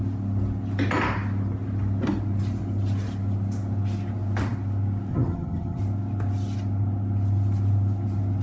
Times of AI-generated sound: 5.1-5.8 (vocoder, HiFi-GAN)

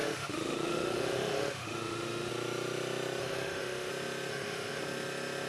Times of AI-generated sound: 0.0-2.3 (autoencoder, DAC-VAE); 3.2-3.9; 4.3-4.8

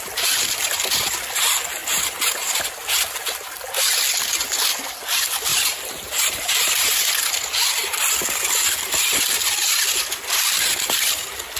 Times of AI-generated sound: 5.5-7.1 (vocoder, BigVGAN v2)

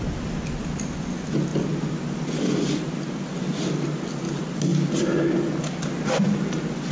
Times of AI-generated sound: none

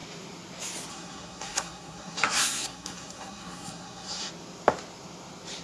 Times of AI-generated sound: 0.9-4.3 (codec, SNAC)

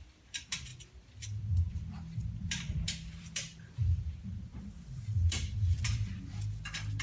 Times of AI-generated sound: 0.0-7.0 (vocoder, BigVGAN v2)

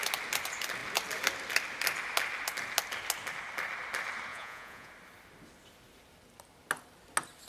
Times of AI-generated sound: 4.3-4.9 (vocoder, Vocos)